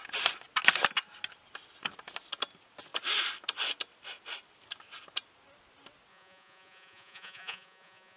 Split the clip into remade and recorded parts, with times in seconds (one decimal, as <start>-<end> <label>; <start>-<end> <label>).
0.0-6.1 recorded; 6.1-8.2 remade